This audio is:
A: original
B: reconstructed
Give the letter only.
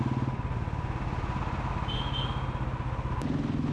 A